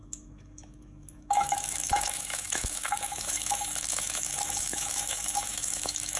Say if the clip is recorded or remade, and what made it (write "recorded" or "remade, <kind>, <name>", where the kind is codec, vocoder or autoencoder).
remade, autoencoder, DAC-VAE